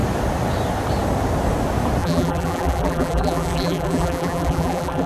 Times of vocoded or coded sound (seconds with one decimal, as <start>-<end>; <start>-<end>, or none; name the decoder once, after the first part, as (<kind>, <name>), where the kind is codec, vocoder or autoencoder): 2.0-5.1 (vocoder, BigVGAN v2)